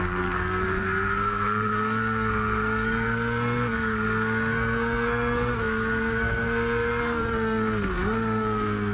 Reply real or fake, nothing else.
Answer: fake